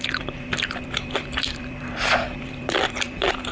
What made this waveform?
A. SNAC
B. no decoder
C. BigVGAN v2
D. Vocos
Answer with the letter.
C